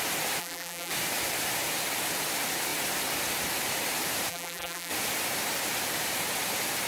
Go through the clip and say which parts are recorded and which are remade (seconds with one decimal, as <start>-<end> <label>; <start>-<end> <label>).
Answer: 0.0-0.4 recorded; 0.4-0.9 remade; 0.9-4.3 recorded; 4.3-4.9 remade; 4.9-6.9 recorded